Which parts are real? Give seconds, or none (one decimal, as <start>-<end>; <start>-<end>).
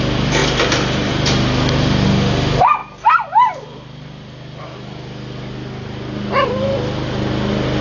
0.0-7.8